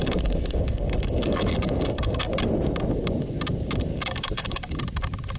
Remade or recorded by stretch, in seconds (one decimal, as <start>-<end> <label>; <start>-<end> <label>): 0.0-2.3 remade; 2.3-3.9 recorded; 3.9-4.8 remade; 4.8-5.4 recorded